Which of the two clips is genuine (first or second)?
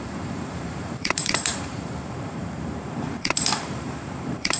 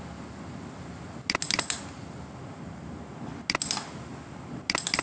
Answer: second